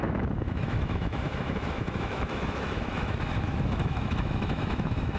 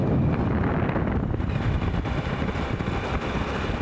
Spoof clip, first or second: first